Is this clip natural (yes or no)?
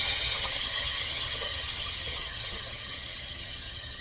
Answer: no